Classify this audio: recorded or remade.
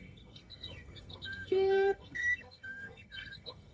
remade